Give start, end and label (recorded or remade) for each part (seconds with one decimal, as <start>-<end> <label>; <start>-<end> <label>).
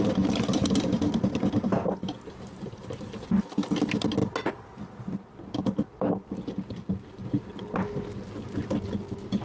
0.0-9.4 recorded